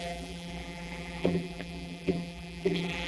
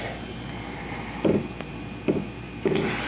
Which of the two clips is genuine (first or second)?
second